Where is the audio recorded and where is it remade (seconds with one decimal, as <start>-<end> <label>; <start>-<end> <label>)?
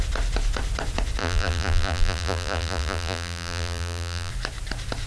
0.0-1.2 recorded; 1.2-4.3 remade; 4.3-5.1 recorded